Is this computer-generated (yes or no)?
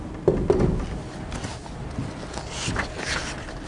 no